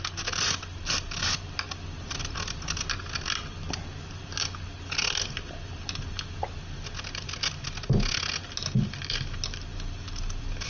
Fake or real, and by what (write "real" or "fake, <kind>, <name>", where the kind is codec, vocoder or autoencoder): real